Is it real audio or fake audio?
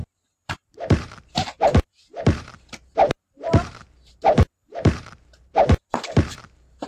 fake